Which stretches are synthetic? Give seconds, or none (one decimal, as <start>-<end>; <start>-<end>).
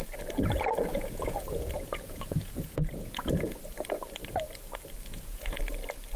0.9-3.6; 5.1-5.6